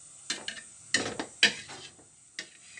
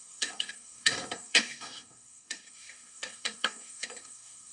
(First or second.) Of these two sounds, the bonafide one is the first